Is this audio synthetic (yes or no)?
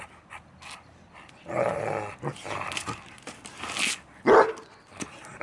no